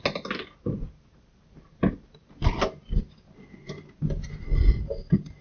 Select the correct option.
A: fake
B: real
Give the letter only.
B